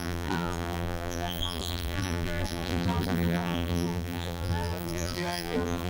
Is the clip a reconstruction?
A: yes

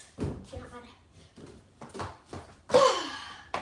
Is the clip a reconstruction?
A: yes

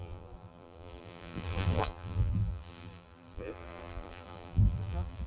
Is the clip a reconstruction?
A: yes